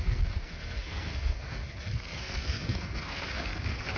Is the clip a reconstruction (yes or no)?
yes